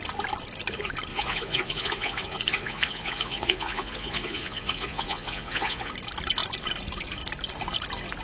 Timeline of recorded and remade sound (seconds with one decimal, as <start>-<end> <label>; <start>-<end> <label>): 0.0-1.1 recorded; 1.1-5.9 remade; 5.9-8.2 recorded